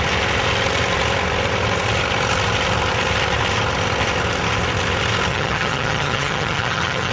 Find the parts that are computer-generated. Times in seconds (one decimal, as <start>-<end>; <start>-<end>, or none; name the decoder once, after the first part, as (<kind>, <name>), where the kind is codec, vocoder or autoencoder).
5.3-7.1 (vocoder, HiFi-GAN)